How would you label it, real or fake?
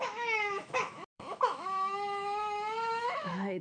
fake